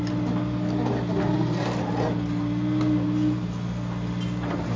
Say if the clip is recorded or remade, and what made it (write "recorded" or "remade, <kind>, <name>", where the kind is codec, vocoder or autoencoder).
recorded